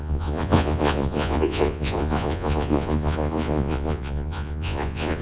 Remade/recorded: remade